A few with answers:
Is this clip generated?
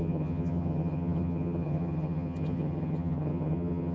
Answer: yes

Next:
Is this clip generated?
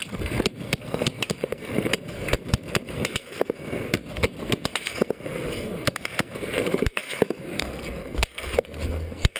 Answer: yes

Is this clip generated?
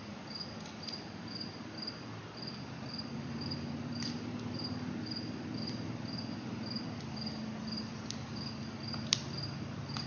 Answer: no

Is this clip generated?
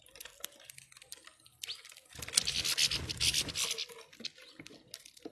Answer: no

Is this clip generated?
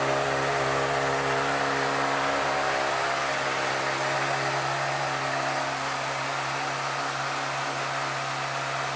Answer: no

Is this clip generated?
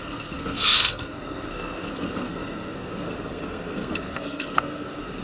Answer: yes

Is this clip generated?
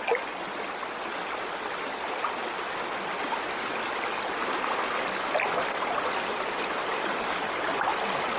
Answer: no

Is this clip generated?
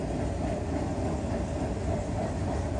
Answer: no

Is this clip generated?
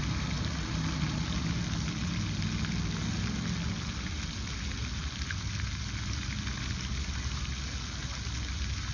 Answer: no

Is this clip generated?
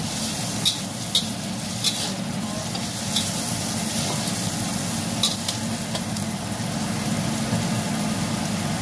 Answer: no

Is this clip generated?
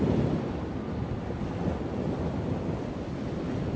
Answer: no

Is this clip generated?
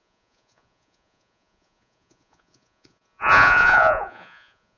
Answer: yes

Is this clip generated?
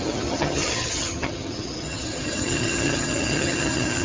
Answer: yes